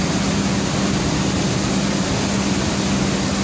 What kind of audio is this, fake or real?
real